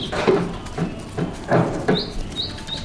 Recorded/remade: remade